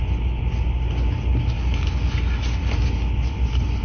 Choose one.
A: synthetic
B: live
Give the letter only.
B